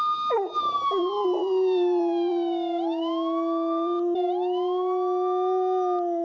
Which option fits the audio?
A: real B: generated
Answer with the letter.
A